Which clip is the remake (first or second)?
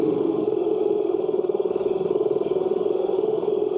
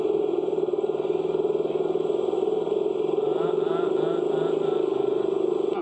first